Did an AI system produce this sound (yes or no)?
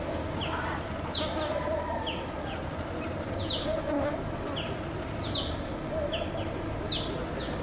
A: no